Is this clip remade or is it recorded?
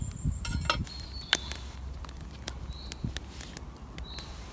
recorded